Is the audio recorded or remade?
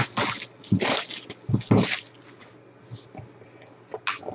recorded